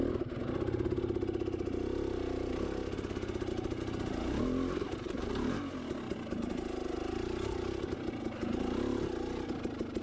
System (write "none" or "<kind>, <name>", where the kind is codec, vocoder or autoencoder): none